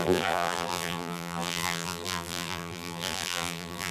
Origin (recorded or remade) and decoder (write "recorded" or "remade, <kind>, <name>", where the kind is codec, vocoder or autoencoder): remade, vocoder, BigVGAN v2